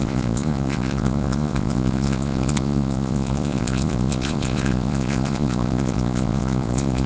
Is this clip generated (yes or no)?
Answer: yes